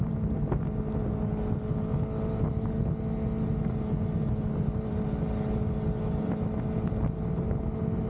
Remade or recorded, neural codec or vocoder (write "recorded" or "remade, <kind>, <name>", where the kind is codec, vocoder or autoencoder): recorded